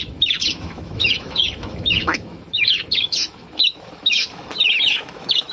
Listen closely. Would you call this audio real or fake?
fake